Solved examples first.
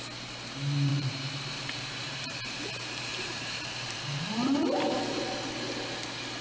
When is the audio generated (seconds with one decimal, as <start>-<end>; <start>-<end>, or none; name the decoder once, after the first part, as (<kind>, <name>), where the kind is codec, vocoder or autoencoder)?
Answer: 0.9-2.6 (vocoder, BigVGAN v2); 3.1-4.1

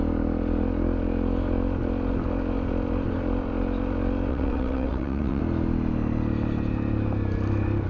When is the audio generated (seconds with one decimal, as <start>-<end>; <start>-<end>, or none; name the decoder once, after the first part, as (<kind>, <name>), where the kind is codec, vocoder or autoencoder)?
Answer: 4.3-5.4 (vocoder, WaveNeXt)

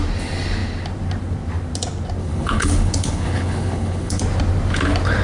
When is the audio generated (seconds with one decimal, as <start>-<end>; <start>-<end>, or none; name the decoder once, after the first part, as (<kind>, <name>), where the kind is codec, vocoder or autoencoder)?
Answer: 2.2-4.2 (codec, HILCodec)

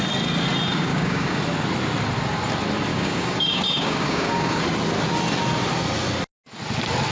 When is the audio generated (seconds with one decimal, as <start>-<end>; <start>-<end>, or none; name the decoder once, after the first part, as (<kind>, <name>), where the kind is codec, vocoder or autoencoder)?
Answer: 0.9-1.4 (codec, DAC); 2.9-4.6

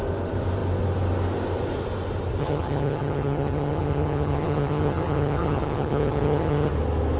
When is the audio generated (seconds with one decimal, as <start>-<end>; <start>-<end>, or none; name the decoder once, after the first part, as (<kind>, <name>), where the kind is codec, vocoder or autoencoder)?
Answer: 2.4-6.7 (vocoder, HiFi-GAN)